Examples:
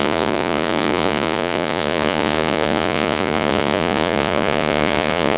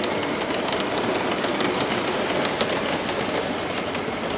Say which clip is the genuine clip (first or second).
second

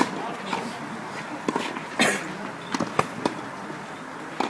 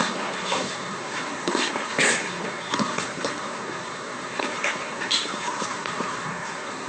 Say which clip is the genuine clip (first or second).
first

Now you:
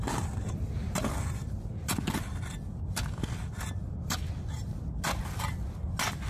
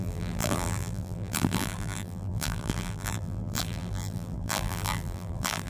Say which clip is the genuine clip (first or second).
first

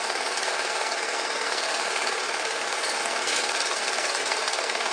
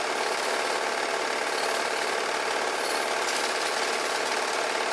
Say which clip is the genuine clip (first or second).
second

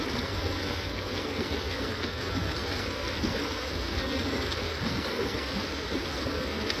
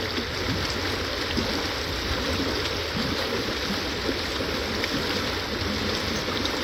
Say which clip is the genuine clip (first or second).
second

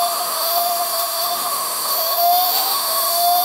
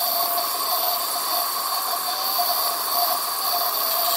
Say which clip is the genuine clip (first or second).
second